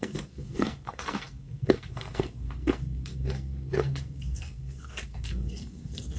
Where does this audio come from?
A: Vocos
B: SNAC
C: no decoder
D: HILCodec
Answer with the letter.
B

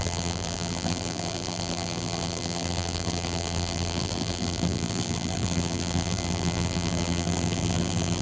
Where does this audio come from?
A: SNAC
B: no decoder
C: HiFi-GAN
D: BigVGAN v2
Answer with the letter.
D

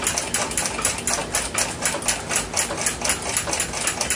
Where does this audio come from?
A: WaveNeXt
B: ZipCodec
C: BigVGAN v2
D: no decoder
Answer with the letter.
D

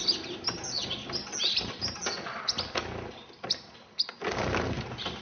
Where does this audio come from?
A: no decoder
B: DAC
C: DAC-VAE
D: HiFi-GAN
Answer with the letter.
A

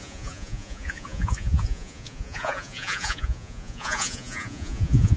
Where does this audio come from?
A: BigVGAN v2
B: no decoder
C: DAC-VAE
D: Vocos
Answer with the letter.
D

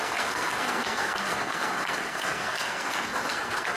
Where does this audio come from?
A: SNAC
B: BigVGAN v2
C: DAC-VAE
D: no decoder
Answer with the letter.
A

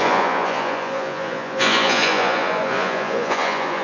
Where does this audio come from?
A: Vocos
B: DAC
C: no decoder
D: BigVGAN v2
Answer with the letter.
A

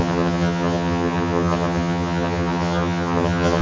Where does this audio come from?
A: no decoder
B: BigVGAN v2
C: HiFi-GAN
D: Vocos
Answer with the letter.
C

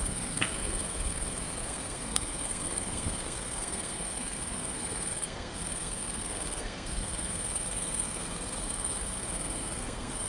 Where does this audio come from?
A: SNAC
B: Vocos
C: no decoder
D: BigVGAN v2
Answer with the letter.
A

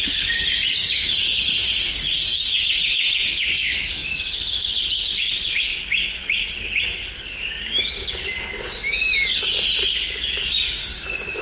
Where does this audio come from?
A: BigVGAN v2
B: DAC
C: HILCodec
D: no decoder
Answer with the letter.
B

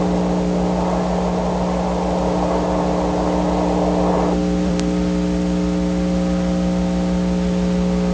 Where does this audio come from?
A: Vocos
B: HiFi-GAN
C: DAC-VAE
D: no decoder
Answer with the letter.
D